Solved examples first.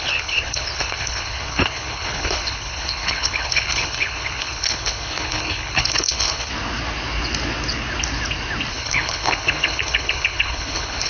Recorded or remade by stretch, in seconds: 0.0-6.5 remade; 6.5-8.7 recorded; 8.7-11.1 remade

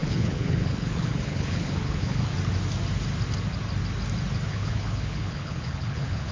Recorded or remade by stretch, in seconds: 0.0-2.3 remade; 2.3-4.5 recorded; 4.5-6.3 remade

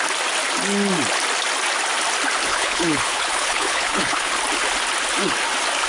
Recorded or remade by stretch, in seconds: 0.0-2.5 recorded; 2.5-4.3 remade; 4.3-5.9 recorded

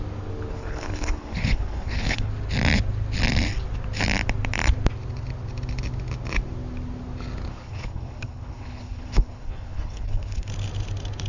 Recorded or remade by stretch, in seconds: 0.0-0.5 recorded; 0.5-2.3 remade; 2.3-7.5 recorded; 7.5-10.5 remade; 10.5-11.3 recorded

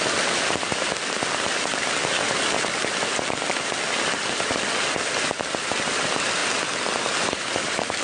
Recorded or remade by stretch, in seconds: 0.0-8.0 recorded